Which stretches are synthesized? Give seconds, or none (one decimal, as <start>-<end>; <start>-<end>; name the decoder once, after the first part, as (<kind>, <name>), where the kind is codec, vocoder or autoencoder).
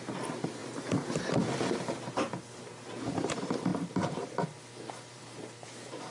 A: 0.0-0.6 (vocoder, BigVGAN v2); 1.7-6.1